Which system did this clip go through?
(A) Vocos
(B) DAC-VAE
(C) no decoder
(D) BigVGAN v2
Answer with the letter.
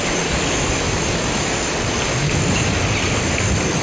C